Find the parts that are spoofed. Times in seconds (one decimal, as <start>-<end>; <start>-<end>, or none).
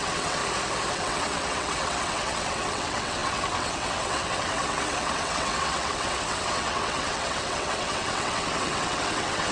0.0-0.4; 0.9-9.5